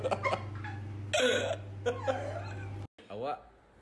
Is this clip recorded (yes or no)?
yes